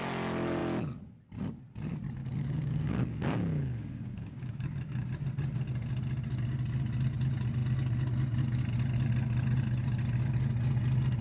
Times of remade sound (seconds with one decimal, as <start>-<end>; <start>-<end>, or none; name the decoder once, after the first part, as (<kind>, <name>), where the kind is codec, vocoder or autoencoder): 2.2-5.1 (codec, DAC)